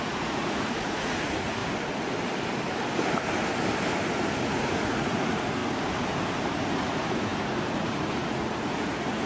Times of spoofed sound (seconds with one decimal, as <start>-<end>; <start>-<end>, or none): 0.0-1.6; 4.4-5.6; 6.6-9.3